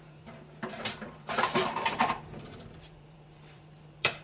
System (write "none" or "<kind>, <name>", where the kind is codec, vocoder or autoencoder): vocoder, BigVGAN v2